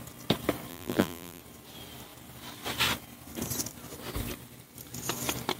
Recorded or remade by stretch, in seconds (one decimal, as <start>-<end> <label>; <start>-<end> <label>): 0.0-0.7 recorded; 0.7-1.4 remade; 1.4-5.6 recorded